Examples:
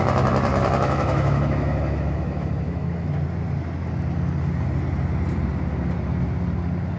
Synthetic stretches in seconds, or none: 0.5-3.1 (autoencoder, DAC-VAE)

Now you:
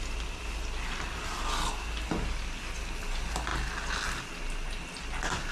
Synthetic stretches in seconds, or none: none

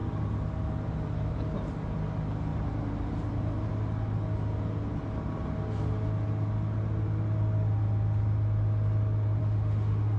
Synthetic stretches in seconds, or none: 9.4-10.2 (autoencoder, DAC-VAE)

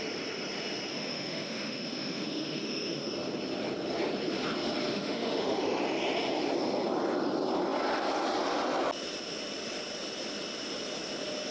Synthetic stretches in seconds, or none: 0.9-3.1 (autoencoder, DAC-VAE); 4.9-5.8

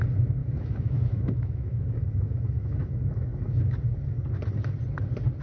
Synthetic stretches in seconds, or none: 0.4-3.6 (autoencoder, DAC-VAE)